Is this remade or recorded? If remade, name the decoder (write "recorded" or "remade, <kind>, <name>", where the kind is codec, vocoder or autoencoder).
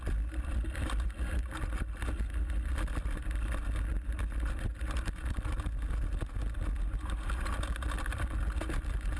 recorded